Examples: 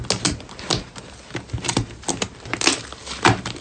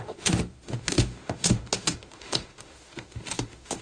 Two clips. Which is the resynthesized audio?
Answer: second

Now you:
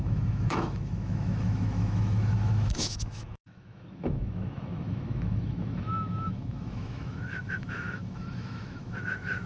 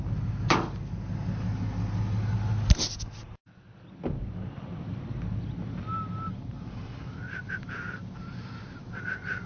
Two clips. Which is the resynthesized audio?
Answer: first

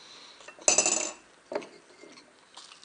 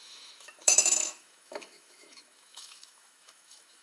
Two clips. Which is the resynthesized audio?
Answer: second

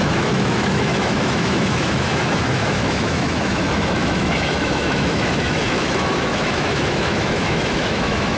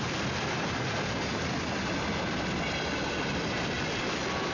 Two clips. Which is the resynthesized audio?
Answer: first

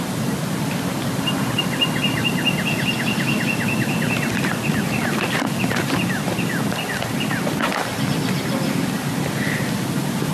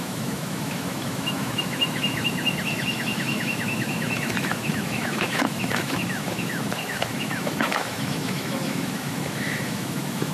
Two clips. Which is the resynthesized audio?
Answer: second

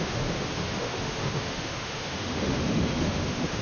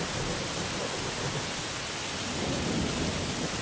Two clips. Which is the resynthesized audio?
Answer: first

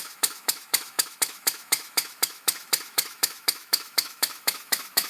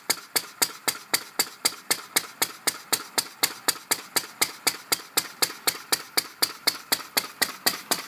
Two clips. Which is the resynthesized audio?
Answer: first